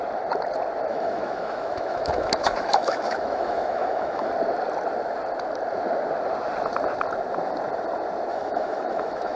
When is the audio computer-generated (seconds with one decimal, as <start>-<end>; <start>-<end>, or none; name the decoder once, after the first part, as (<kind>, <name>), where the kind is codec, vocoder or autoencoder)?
0.9-4.3 (autoencoder, DAC-VAE); 8.3-9.4